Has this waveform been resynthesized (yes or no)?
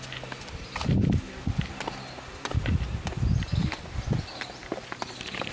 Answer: no